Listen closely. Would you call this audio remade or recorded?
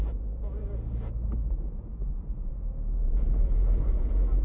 remade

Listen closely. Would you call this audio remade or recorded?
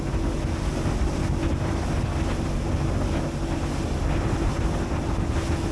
recorded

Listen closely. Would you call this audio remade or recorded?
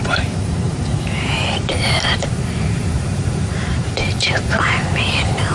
remade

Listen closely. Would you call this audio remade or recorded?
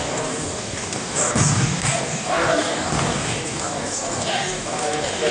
remade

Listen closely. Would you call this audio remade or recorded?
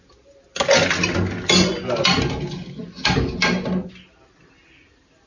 recorded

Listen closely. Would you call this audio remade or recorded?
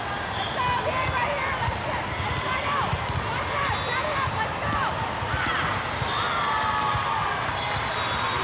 recorded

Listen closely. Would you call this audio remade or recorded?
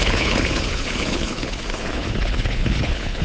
remade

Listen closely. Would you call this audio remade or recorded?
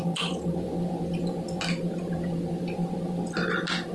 recorded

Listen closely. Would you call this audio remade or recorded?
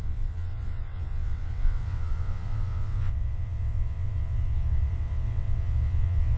remade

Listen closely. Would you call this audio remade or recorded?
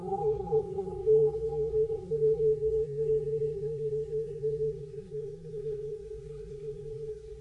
remade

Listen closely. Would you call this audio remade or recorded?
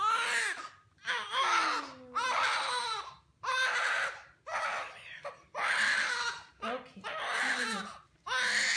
recorded